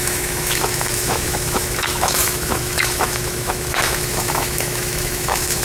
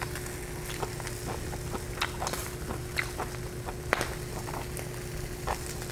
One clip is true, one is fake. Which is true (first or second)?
second